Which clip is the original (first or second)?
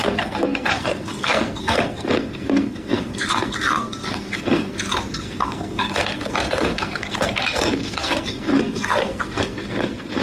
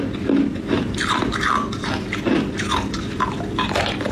second